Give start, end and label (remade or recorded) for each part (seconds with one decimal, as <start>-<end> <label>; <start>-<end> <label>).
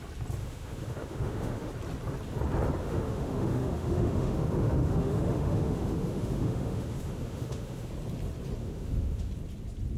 0.0-0.4 recorded; 0.4-1.7 remade; 1.7-2.8 recorded; 2.8-7.9 remade; 7.9-8.6 recorded; 8.6-9.3 remade; 9.3-10.0 recorded